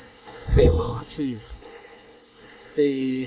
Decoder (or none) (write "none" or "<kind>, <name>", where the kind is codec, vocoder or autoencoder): codec, SNAC